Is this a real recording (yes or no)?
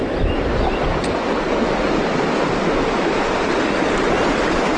yes